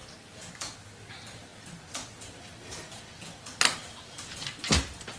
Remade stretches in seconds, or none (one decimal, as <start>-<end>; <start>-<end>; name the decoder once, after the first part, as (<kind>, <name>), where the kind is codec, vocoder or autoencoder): none